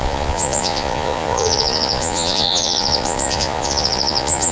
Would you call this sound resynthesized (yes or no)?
yes